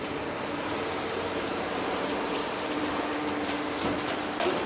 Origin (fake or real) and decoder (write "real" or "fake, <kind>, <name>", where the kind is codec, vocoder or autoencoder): fake, vocoder, BigVGAN v2